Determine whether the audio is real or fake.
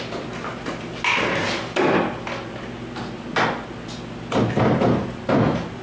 real